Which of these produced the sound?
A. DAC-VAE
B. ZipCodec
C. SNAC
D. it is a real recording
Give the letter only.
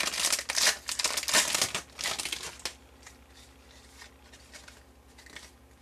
D